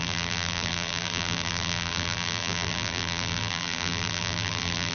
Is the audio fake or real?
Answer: fake